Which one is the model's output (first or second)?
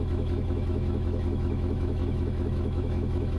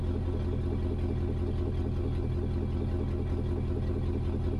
first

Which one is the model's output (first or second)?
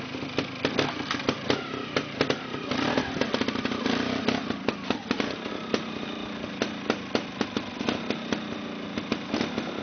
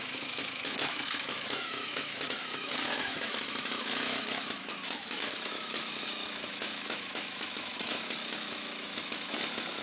second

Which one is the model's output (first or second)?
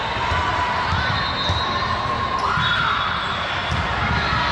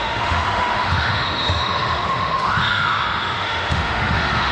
second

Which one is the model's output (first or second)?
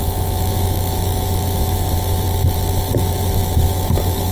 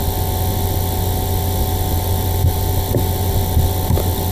first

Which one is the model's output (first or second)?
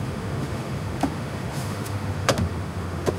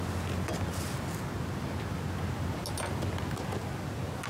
first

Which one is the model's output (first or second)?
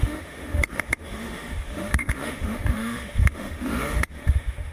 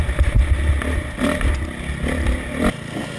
first